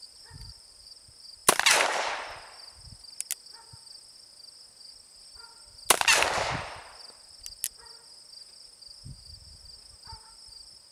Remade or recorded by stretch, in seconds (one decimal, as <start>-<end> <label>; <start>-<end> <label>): 0.0-0.9 remade; 0.9-10.9 recorded